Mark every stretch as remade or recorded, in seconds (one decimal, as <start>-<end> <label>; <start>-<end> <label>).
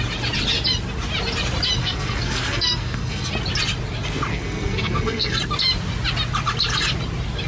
0.0-1.8 recorded; 1.8-3.3 remade; 3.3-4.3 recorded; 4.3-5.4 remade; 5.4-7.5 recorded